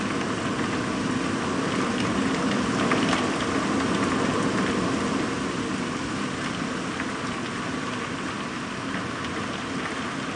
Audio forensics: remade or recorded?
recorded